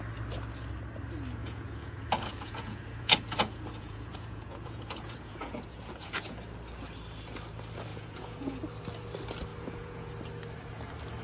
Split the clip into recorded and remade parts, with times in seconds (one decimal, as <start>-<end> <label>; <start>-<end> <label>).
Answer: 0.0-1.4 recorded; 1.4-6.5 remade; 6.5-7.9 recorded; 7.9-8.6 remade; 8.6-9.5 recorded; 9.5-10.1 remade; 10.1-11.2 recorded